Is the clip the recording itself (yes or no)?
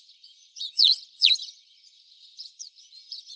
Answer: no